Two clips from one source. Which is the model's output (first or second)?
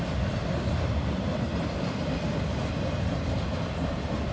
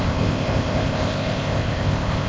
second